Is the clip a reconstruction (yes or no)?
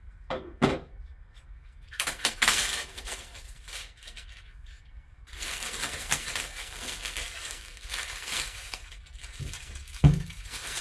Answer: yes